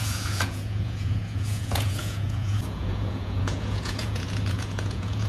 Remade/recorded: remade